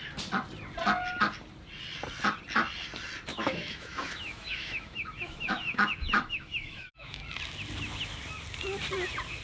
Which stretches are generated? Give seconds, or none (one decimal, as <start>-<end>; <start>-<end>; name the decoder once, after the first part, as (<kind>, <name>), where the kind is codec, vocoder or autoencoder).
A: 3.3-7.4 (autoencoder, DAC-VAE)